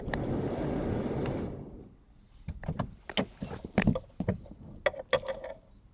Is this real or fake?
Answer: real